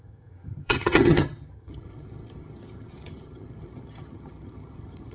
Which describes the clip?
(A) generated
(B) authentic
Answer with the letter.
A